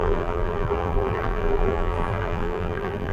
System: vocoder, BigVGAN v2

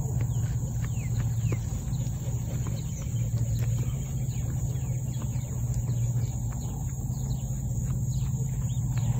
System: none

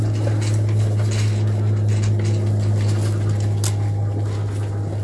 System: none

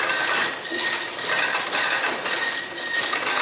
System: none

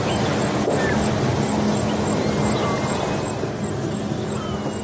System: none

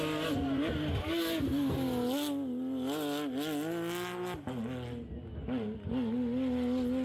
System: none